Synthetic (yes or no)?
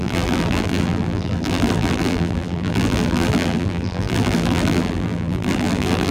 yes